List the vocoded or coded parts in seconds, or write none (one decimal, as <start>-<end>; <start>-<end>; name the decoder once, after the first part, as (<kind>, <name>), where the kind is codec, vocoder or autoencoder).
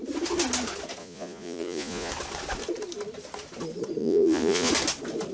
1.0-2.1 (vocoder, Vocos); 4.0-4.7